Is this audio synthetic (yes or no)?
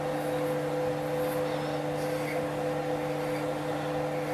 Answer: no